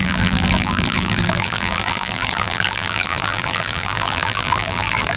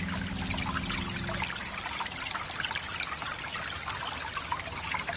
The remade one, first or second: first